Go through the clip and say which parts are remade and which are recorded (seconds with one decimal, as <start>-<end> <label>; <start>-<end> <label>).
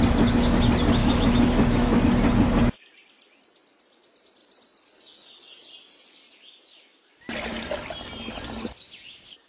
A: 0.0-1.0 recorded; 1.0-2.0 remade; 2.0-9.5 recorded